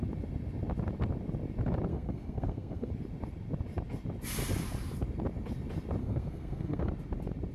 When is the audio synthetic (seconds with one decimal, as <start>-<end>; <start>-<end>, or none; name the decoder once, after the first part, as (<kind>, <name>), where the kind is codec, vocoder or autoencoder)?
1.9-2.9 (codec, SNAC); 6.0-6.9